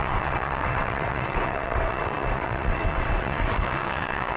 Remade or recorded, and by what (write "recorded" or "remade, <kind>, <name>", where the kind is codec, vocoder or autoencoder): remade, vocoder, WaveNeXt